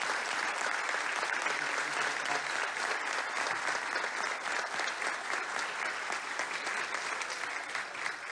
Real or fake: real